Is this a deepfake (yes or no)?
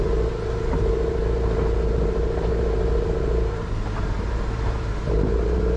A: yes